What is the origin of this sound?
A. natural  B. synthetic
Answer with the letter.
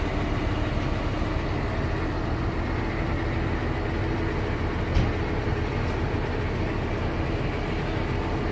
A